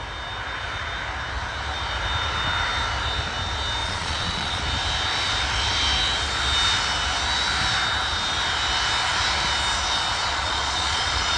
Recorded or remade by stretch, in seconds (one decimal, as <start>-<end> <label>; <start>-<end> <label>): 0.0-3.8 recorded; 3.8-4.6 remade; 4.6-10.2 recorded; 10.2-11.4 remade